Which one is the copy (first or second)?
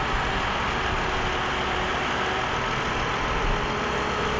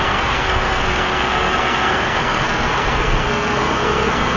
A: second